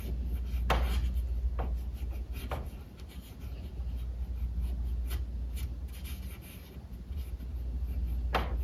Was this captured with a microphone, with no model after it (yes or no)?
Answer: yes